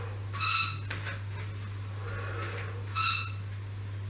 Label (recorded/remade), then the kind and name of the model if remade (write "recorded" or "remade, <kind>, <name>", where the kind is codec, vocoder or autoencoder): recorded